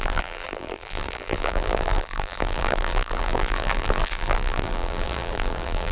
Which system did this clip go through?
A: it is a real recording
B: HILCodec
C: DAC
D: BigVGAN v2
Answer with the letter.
D